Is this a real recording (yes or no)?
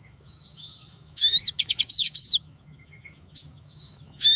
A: no